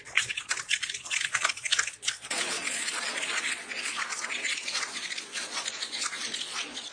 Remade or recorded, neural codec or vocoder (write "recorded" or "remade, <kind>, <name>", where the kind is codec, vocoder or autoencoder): remade, vocoder, Vocos